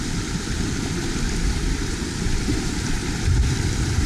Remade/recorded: remade